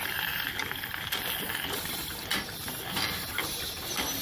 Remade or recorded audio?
recorded